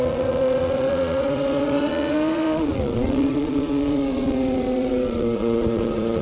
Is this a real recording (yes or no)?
no